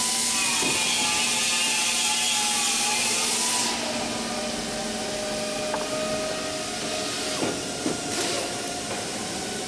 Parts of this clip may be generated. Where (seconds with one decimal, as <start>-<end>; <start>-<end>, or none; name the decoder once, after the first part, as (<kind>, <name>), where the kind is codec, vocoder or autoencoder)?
none